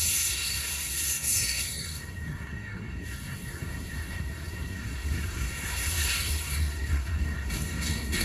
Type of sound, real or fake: fake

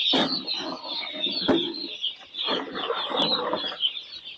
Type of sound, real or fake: real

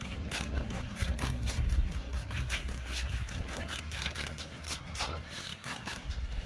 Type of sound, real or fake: fake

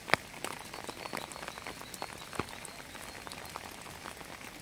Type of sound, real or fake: real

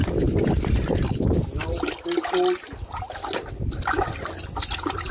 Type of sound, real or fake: real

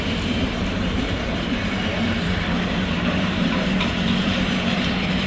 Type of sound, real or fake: fake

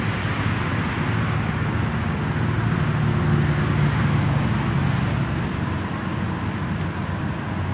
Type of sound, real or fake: real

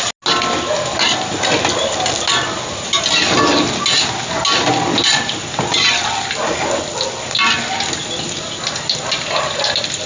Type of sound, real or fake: real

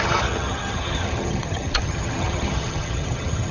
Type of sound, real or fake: fake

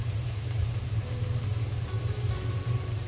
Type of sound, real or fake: fake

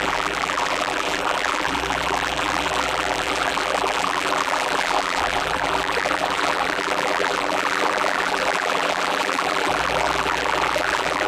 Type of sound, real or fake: fake